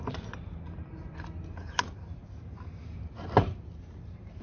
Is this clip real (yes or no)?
yes